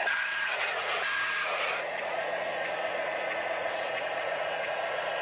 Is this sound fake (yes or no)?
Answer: yes